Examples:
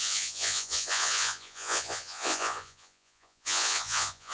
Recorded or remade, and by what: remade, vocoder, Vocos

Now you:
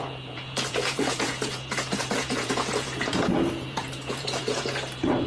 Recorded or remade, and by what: remade, vocoder, Vocos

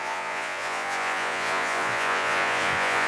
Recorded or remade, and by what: remade, vocoder, Vocos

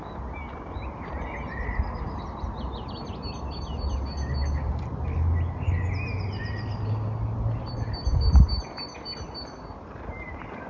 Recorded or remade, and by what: recorded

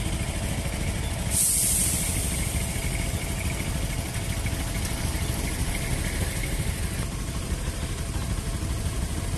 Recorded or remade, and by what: recorded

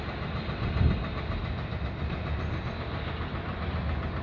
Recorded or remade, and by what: recorded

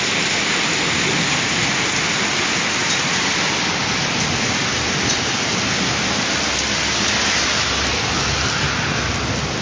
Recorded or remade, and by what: recorded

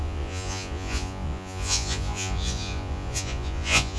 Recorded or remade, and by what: remade, vocoder, Vocos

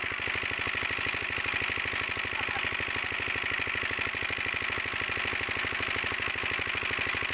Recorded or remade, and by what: recorded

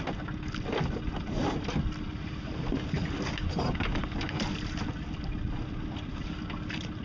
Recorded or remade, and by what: recorded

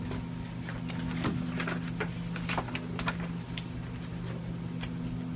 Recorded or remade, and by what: recorded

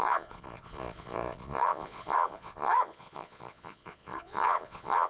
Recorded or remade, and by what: remade, vocoder, Vocos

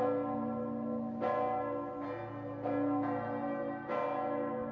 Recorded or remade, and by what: recorded